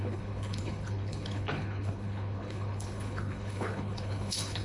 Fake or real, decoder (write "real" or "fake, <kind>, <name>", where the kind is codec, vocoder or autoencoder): fake, codec, HILCodec